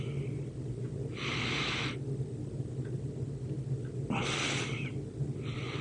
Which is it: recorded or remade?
recorded